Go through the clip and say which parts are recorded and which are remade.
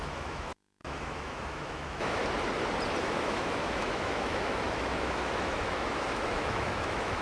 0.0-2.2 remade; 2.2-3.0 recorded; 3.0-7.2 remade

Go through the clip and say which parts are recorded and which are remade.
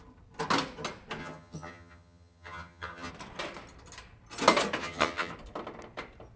0.0-1.2 recorded; 1.2-3.1 remade; 3.1-4.8 recorded; 4.8-5.3 remade; 5.3-6.4 recorded